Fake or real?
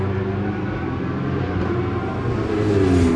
real